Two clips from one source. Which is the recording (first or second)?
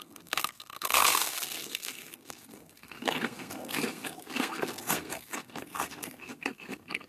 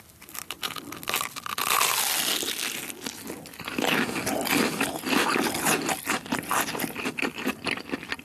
second